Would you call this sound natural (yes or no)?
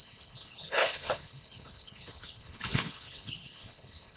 no